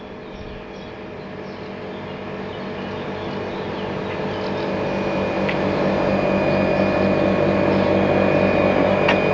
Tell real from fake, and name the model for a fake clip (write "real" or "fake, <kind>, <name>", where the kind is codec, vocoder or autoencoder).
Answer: real